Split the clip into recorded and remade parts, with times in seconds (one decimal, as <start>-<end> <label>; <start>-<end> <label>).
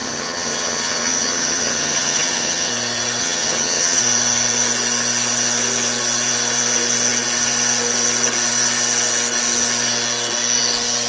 0.0-2.7 remade; 2.7-3.2 recorded; 3.2-4.0 remade; 4.0-11.1 recorded